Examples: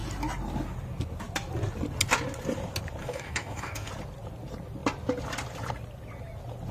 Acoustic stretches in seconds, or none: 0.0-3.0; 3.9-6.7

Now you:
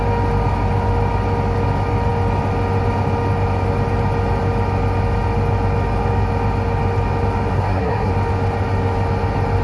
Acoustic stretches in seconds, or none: 0.0-7.5; 8.1-9.6

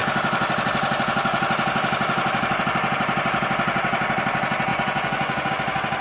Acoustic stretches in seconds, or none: 0.0-4.7; 5.5-6.0

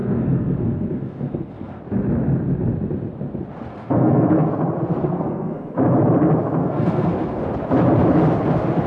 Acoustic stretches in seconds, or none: 1.8-3.7; 4.5-5.0; 5.7-6.6; 7.4-8.9

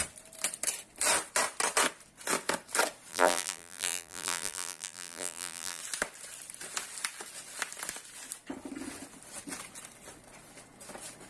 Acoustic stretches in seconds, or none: 0.0-3.1; 5.8-11.3